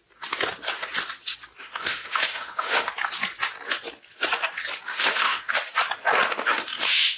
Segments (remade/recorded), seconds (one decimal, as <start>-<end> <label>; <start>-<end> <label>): 0.0-1.6 recorded; 1.6-2.9 remade; 2.9-4.9 recorded; 4.9-5.5 remade; 5.5-6.3 recorded; 6.3-7.2 remade